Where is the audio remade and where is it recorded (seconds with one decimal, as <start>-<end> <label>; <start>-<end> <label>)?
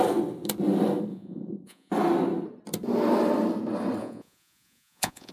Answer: 0.0-1.1 recorded; 1.1-1.9 remade; 1.9-4.0 recorded; 4.0-5.3 remade